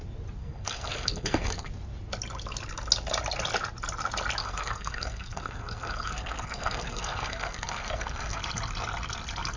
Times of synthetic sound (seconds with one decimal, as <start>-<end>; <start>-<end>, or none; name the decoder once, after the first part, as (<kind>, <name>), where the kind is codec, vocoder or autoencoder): 0.4-1.7 (codec, SNAC); 4.4-8.4